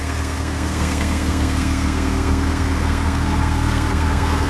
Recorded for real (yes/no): no